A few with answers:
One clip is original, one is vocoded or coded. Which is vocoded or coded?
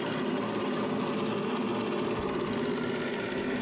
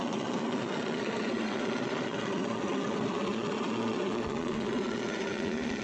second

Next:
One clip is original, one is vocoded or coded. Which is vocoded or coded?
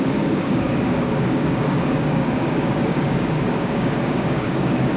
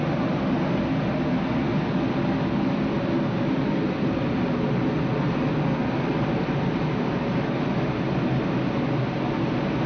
first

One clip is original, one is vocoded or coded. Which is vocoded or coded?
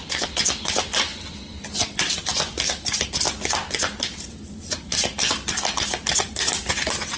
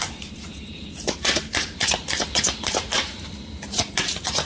second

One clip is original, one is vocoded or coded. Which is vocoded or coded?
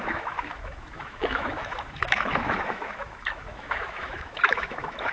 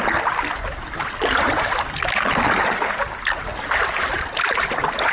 first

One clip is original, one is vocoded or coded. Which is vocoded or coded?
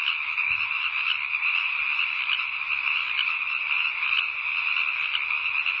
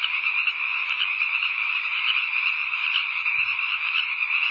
second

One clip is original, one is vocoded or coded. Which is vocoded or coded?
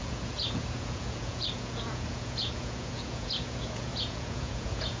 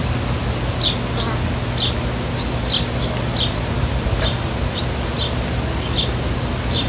first